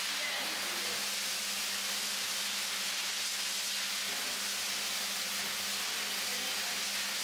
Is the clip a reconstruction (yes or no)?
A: no